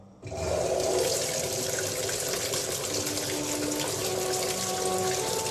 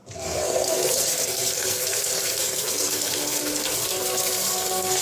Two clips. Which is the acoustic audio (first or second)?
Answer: first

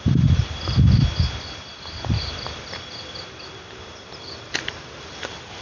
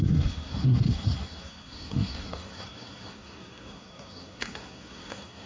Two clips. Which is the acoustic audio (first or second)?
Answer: first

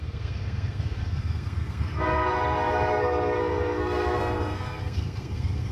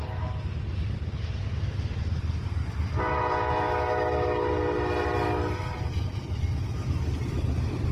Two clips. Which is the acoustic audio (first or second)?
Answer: second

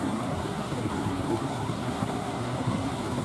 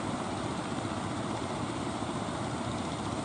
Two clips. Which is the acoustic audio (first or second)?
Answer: second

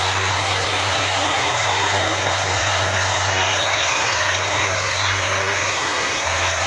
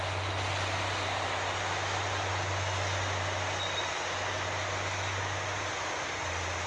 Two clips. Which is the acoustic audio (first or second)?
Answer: second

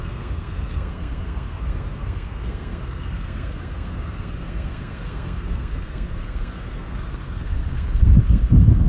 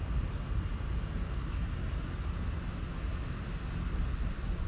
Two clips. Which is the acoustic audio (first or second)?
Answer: second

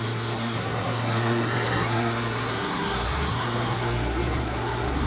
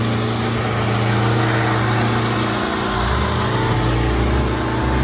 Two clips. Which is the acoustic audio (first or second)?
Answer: second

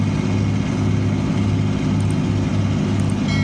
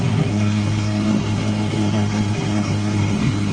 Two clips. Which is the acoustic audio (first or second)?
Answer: first